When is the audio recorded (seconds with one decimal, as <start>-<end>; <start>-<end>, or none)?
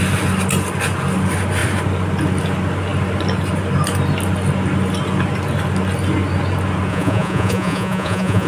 0.0-6.9